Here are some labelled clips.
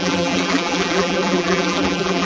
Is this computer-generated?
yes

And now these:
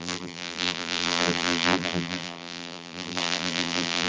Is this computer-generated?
yes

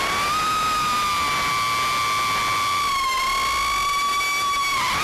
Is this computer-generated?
no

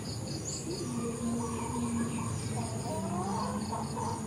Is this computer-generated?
no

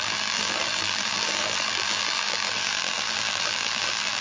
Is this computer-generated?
yes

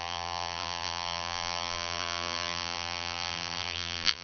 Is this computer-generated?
yes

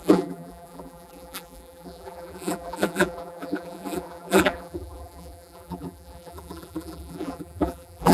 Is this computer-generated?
yes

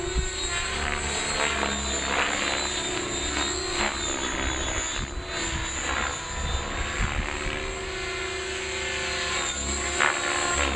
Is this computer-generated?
no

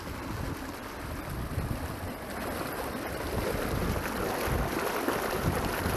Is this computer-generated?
no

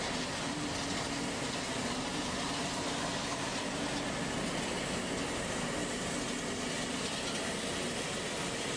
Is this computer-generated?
no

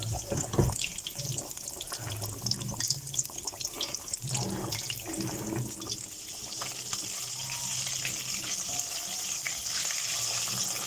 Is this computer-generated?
yes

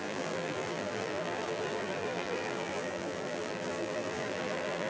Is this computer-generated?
yes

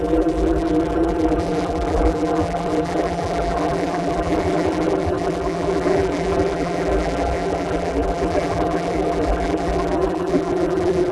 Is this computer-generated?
yes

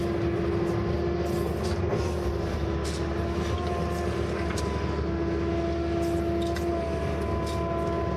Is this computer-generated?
no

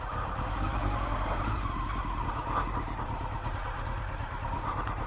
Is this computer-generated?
yes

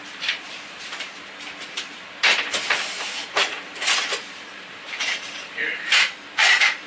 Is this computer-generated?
yes